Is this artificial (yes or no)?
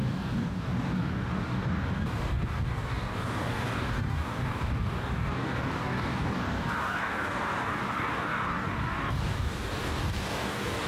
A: yes